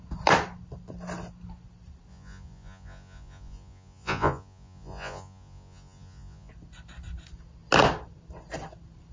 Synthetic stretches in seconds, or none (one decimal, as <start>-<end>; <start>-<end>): 2.1-6.5